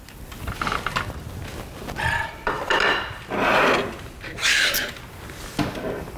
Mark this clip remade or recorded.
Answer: recorded